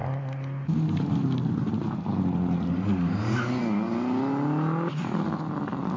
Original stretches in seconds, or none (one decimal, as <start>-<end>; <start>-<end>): 0.0-6.0